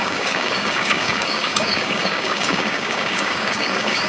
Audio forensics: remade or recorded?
remade